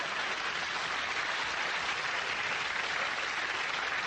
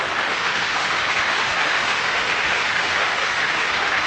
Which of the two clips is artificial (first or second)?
second